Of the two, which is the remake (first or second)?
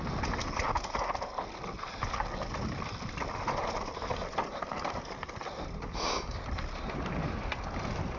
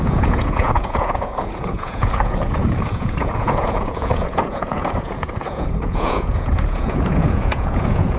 second